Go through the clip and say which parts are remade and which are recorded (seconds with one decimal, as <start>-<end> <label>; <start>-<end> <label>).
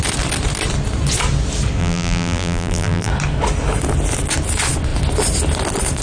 0.0-1.8 recorded; 1.8-3.1 remade; 3.1-6.0 recorded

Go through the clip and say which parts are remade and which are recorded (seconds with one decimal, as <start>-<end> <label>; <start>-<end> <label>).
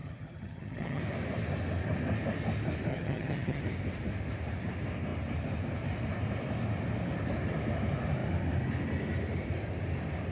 0.0-1.0 remade; 1.0-2.9 recorded; 2.9-3.6 remade; 3.6-10.3 recorded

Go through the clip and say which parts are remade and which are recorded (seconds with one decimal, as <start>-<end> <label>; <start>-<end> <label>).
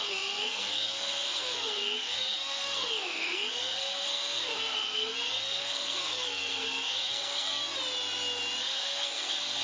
0.0-7.6 remade; 7.6-8.6 recorded; 8.6-9.6 remade